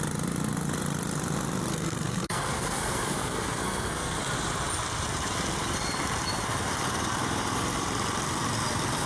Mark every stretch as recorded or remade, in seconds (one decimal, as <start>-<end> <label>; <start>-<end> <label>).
0.0-1.7 recorded; 1.7-4.2 remade; 4.2-9.1 recorded